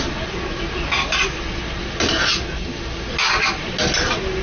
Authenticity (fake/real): real